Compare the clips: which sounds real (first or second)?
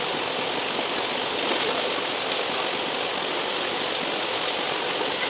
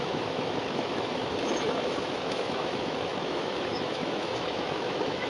first